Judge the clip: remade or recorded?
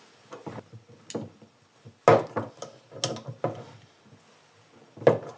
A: recorded